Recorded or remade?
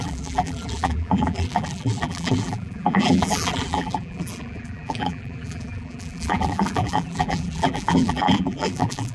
remade